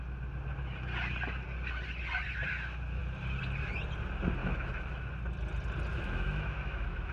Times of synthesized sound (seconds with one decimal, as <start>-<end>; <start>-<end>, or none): 4.4-5.1; 5.9-7.1

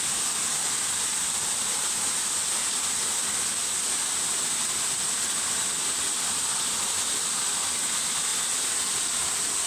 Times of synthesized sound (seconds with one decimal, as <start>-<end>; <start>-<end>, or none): none